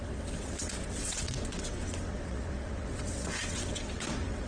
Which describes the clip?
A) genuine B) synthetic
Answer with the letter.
B